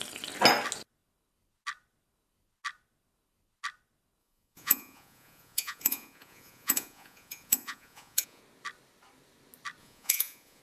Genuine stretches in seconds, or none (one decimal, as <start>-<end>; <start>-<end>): 0.0-4.2; 8.4-9.8